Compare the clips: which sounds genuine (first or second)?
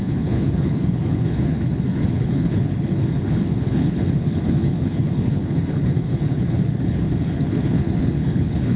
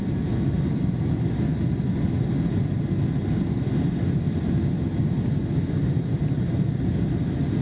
second